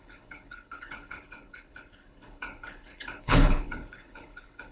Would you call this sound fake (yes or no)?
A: yes